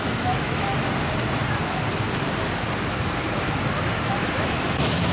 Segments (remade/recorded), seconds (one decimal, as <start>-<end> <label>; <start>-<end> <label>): 0.0-0.7 remade; 0.7-3.8 recorded; 3.8-5.1 remade